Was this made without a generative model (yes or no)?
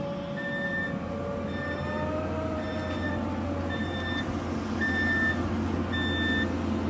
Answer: yes